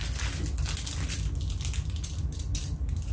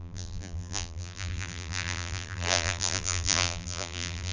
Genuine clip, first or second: first